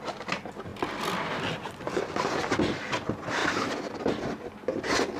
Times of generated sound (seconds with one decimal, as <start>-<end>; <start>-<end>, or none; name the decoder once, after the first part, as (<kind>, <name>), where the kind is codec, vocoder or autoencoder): 3.4-4.2 (vocoder, BigVGAN v2)